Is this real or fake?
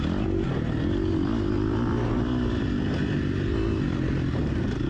real